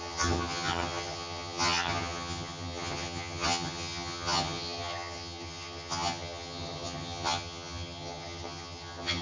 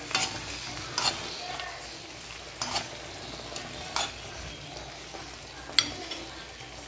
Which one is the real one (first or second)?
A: second